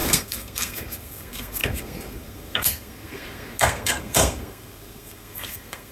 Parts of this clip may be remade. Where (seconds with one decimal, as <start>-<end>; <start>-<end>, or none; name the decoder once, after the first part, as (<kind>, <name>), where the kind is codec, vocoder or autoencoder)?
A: 0.0-5.9 (codec, SNAC)